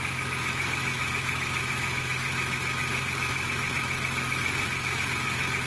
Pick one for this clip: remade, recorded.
remade